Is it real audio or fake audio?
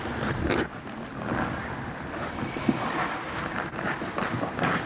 real